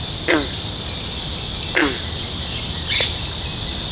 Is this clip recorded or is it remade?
recorded